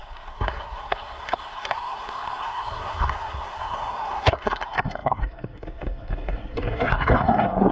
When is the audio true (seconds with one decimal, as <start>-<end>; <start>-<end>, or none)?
none